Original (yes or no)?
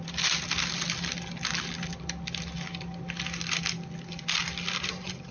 yes